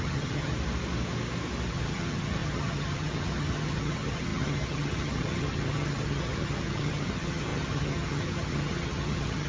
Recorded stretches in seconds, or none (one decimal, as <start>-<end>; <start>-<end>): 0.5-1.7